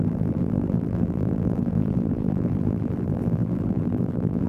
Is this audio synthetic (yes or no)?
yes